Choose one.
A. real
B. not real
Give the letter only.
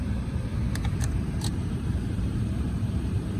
B